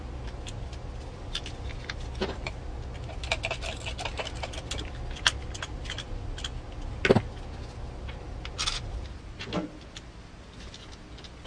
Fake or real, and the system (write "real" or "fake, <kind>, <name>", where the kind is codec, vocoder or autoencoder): real